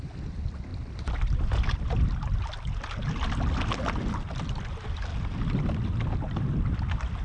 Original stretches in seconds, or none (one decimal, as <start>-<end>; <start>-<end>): 0.0-7.2